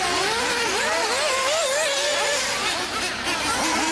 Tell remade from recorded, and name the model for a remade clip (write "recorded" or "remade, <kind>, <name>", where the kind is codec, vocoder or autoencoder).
recorded